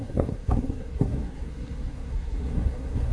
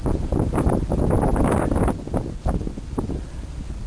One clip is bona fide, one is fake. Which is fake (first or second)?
first